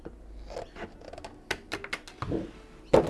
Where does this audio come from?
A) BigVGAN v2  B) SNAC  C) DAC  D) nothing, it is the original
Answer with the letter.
D